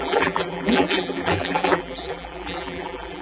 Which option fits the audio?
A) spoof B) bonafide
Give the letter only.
A